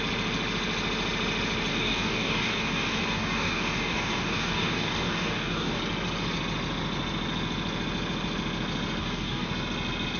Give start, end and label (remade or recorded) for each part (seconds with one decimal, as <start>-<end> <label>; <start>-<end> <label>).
0.0-1.7 recorded; 1.7-5.8 remade; 5.8-9.0 recorded; 9.0-9.5 remade; 9.5-10.2 recorded